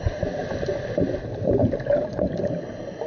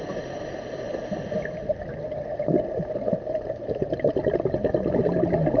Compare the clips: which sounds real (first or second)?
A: second